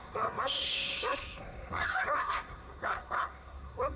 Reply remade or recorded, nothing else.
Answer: remade